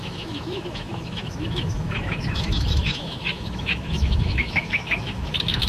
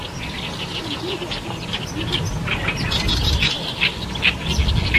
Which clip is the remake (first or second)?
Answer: first